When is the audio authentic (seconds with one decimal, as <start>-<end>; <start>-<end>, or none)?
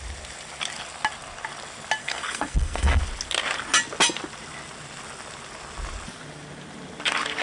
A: 0.0-2.0; 3.0-7.4